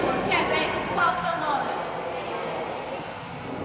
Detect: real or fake real